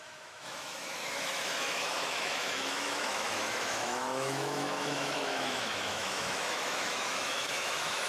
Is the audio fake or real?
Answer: fake